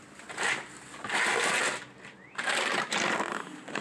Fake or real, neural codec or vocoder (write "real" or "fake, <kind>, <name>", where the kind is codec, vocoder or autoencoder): real